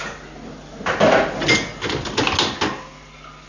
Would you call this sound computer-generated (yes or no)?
no